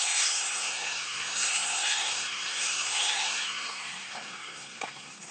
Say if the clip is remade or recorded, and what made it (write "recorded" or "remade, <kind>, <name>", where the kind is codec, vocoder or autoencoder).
remade, codec, SNAC